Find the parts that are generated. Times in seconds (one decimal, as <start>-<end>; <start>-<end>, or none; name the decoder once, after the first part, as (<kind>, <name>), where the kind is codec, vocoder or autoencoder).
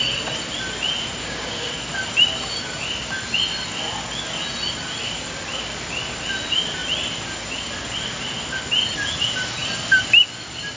1.2-1.7 (codec, DAC)